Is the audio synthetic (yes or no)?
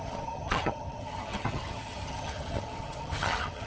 yes